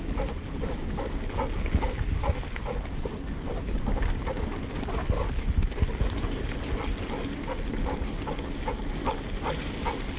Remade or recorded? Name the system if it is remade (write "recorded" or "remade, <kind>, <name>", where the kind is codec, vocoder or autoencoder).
recorded